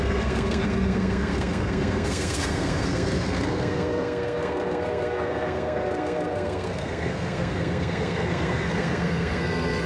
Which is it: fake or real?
fake